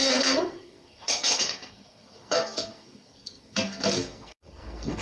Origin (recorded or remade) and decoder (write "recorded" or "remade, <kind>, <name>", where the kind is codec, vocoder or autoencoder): remade, codec, SNAC